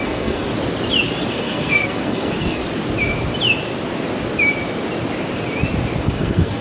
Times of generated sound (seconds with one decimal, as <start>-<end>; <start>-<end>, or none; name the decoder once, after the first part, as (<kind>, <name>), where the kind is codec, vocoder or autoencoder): 0.0-0.5 (codec, SNAC); 1.3-2.6; 6.0-6.6